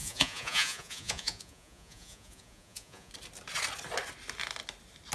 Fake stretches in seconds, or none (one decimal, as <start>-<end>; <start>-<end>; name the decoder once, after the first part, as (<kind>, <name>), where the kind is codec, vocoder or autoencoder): 0.0-3.1 (vocoder, Vocos)